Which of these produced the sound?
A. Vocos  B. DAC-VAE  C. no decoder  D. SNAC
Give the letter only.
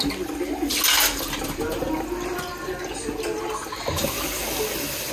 C